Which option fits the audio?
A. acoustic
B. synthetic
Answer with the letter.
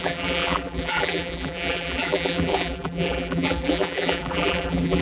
B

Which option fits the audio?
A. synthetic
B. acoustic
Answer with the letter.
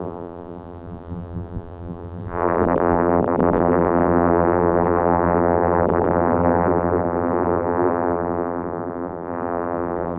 A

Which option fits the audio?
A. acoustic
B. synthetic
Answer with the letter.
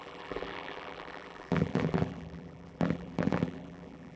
B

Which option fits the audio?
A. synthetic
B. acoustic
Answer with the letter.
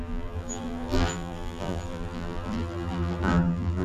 A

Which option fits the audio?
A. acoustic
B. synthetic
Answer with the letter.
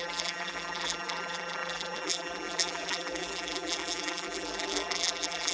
B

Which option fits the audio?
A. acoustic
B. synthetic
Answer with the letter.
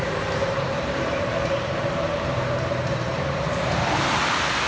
B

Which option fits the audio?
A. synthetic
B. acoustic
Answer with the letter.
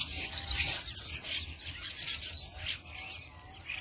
B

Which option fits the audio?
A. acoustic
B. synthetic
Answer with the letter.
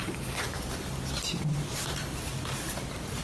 A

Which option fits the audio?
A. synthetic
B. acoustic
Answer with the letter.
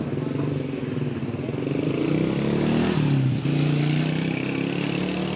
B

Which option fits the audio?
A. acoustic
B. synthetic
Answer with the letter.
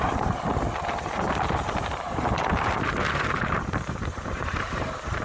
B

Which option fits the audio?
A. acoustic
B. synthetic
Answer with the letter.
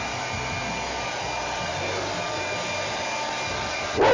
A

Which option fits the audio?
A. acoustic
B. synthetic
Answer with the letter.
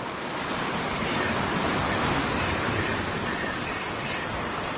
A